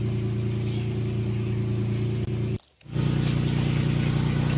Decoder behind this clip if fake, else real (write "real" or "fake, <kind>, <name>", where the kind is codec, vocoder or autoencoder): real